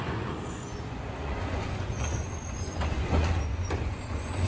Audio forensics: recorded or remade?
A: remade